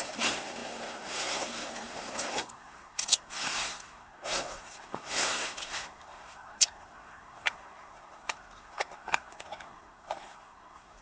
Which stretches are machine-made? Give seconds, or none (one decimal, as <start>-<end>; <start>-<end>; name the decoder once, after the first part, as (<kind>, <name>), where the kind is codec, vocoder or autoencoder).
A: 0.0-11.0 (codec, SNAC)